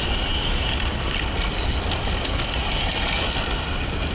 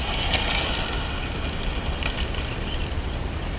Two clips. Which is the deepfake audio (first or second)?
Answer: first